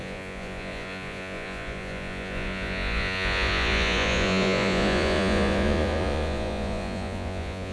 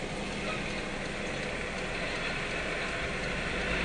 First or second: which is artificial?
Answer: first